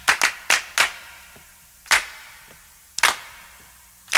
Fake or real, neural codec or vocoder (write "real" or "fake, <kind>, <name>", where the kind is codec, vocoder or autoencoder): real